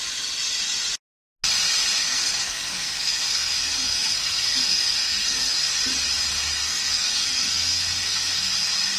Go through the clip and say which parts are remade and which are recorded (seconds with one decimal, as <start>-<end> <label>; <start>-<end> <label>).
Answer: 0.0-2.0 recorded; 2.0-5.7 remade; 5.7-6.6 recorded; 6.6-8.5 remade; 8.5-9.0 recorded